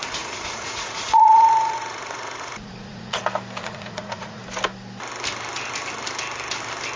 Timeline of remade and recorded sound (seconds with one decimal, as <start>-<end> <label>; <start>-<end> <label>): 0.0-3.2 remade; 3.2-3.6 recorded; 3.6-4.4 remade; 4.4-7.0 recorded